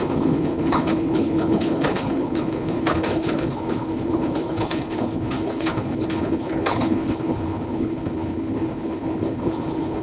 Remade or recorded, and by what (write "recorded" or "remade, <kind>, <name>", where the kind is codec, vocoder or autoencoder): remade, codec, HILCodec